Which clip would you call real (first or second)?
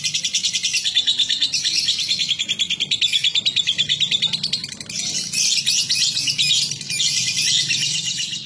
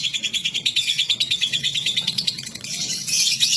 first